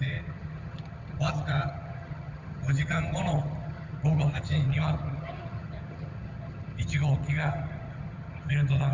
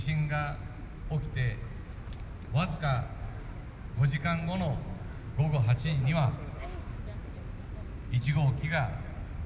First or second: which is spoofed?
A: first